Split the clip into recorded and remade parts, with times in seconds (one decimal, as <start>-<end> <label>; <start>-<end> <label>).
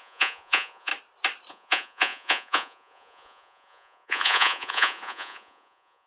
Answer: 0.0-0.9 remade; 0.9-1.5 recorded; 1.5-6.1 remade